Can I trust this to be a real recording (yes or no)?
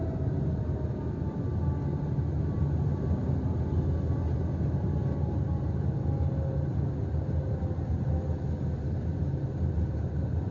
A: yes